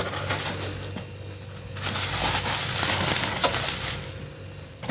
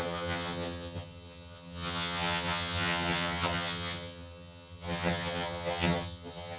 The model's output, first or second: second